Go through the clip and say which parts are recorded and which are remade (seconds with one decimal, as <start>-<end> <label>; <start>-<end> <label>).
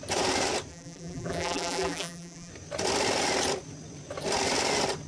0.0-0.7 recorded; 0.7-2.5 remade; 2.5-5.1 recorded